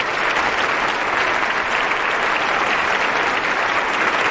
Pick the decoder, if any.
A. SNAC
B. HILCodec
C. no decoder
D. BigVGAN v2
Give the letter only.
C